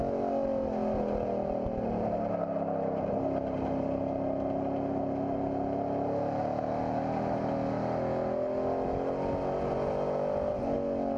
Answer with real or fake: real